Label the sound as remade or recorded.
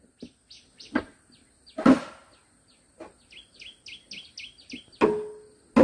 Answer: recorded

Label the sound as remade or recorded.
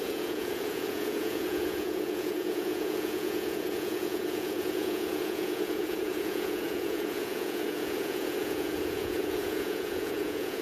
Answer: remade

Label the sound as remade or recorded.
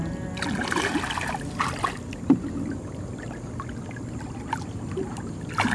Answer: recorded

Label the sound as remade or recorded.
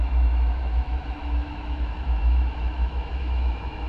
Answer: remade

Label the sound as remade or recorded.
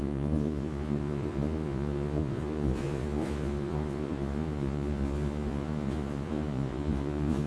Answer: remade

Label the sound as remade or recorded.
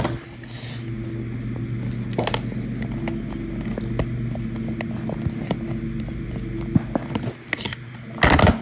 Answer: recorded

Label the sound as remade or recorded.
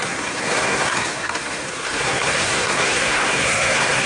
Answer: remade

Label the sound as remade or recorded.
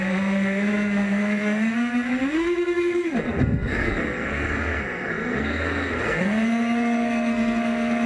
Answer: remade